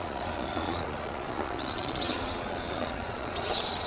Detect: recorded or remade remade